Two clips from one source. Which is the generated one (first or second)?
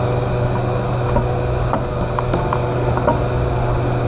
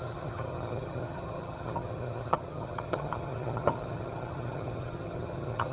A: second